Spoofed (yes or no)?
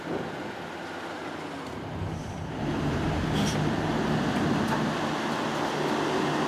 no